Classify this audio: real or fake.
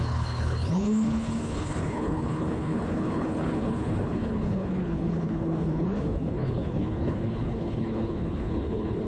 fake